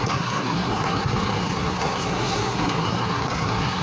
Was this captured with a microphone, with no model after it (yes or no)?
no